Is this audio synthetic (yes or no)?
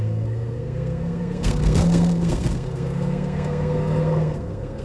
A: yes